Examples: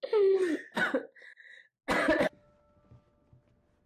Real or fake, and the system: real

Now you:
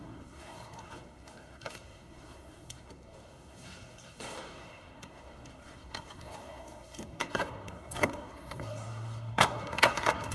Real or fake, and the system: fake, codec, SNAC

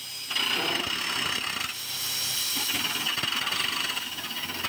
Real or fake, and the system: real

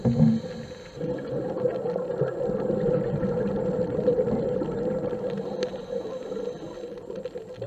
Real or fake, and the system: real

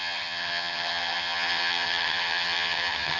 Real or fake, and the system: fake, vocoder, HiFi-GAN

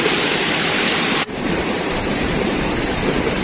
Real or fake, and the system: fake, vocoder, BigVGAN v2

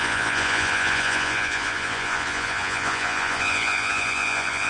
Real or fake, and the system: fake, vocoder, Vocos